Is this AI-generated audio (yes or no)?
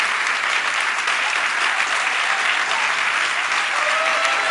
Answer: no